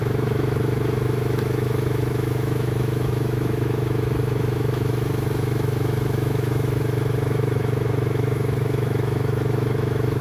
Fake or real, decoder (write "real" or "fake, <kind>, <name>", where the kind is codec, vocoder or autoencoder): fake, autoencoder, DAC-VAE